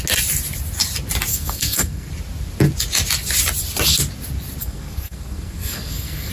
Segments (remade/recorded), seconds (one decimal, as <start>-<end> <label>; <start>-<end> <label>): 0.0-1.3 recorded; 1.3-2.1 remade; 2.1-4.6 recorded; 4.6-6.3 remade